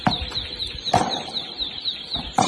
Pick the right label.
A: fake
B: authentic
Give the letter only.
B